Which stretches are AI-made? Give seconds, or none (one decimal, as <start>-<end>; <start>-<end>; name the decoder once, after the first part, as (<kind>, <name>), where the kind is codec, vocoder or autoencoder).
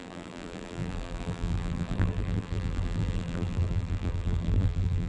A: 0.0-5.1 (vocoder, BigVGAN v2)